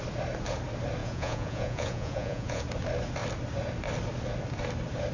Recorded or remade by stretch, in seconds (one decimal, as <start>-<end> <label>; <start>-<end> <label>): 0.0-1.0 recorded; 1.0-2.6 remade; 2.6-5.1 recorded